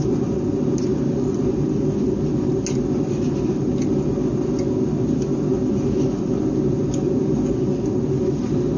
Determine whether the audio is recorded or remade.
recorded